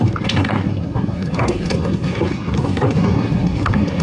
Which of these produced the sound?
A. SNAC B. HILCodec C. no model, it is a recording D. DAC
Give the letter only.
A